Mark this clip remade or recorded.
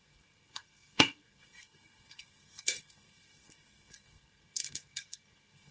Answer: remade